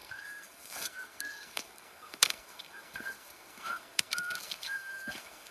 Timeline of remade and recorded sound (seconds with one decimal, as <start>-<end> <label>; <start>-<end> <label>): 0.0-5.5 remade